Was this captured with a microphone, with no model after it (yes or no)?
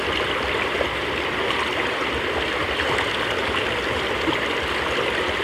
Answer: yes